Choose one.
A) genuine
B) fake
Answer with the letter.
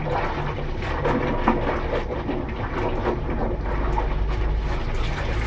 A